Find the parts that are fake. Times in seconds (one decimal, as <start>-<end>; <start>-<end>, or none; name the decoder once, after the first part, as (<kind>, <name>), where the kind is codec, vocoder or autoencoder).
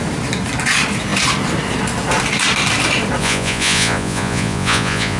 3.2-5.2 (vocoder, Vocos)